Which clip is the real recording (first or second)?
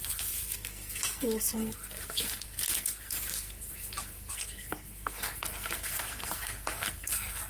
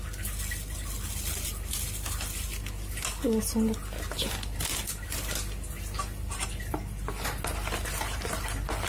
second